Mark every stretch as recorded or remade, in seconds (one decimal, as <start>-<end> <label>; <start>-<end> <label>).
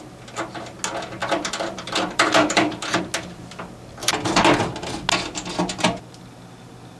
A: 0.0-1.2 recorded; 1.2-3.0 remade; 3.0-4.0 recorded; 4.0-4.6 remade; 4.6-7.0 recorded